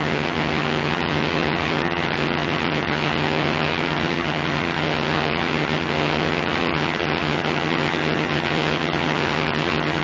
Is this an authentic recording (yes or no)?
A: no